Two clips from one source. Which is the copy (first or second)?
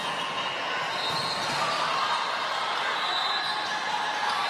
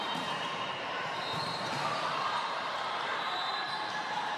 second